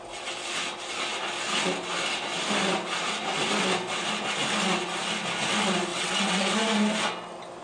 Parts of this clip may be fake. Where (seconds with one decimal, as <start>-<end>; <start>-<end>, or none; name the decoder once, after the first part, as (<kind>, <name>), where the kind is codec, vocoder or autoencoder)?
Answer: 5.9-6.5 (vocoder, WaveNeXt)